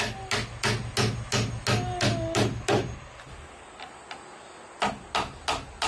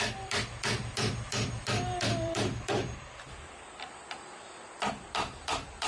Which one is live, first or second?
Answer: first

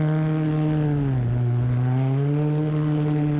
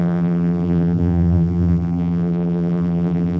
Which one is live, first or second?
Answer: first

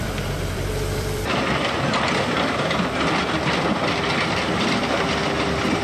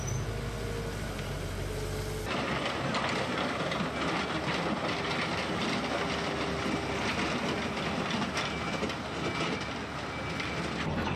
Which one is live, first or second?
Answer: second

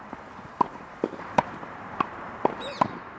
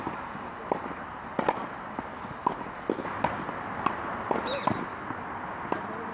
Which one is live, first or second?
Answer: second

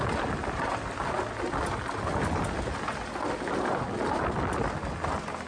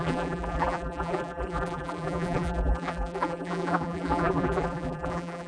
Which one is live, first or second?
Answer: first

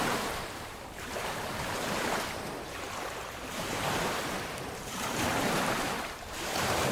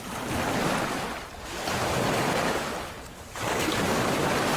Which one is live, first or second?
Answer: second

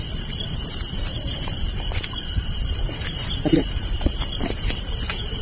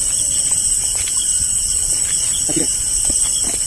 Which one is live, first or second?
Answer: second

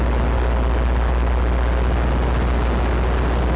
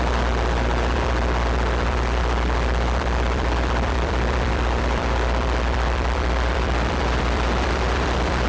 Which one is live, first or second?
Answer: first